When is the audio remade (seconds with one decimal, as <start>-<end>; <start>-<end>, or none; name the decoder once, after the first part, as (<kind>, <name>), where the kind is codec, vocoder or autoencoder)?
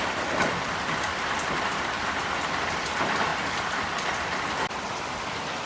0.0-3.3 (vocoder, BigVGAN v2); 4.7-5.7